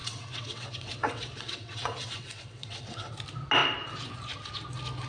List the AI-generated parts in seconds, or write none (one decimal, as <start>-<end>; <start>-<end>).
0.0-3.1